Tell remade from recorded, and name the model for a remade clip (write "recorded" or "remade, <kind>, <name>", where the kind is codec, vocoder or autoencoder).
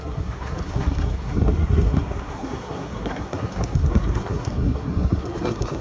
remade, codec, SNAC